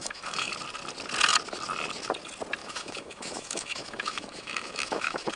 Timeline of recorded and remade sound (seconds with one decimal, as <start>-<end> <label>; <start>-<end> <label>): 0.0-0.5 remade; 0.5-2.6 recorded; 2.6-5.3 remade

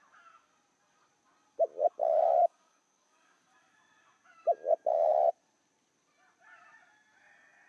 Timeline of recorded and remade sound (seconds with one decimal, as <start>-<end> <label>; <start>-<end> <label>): 0.0-2.0 recorded; 2.0-3.4 remade; 3.4-7.7 recorded

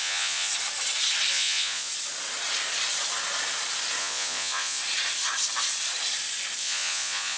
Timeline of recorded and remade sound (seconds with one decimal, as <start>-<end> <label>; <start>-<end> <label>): 0.0-0.5 remade; 0.5-1.3 recorded; 1.3-1.9 remade; 1.9-4.0 recorded; 4.0-4.8 remade; 4.8-6.6 recorded; 6.6-7.4 remade

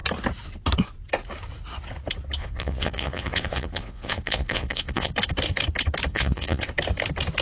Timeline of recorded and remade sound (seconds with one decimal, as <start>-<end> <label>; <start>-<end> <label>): 0.0-2.4 recorded; 2.4-5.1 remade; 5.1-6.1 recorded; 6.1-6.6 remade; 6.6-7.4 recorded

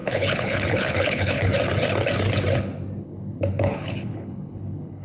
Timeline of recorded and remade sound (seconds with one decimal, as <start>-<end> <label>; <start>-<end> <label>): 0.0-1.5 remade; 1.5-3.0 recorded; 3.0-5.0 remade

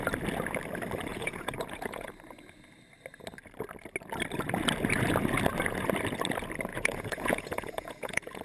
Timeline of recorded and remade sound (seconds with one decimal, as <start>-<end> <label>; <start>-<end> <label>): 0.0-1.1 recorded; 1.1-2.1 remade; 2.1-6.7 recorded; 6.7-8.4 remade